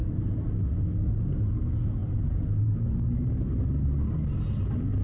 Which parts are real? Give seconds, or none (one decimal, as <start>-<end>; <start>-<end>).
0.6-2.0; 4.3-5.0